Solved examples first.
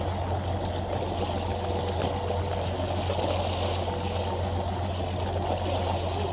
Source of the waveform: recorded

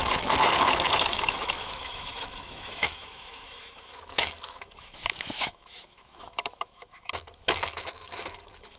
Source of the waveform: remade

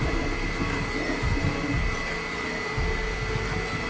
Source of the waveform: recorded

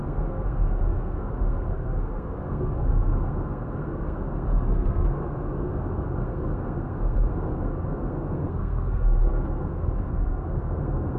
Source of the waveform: remade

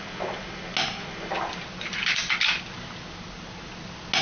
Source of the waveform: recorded